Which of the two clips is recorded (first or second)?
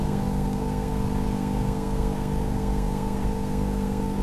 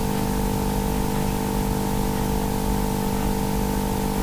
second